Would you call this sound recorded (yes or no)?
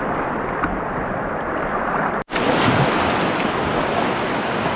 yes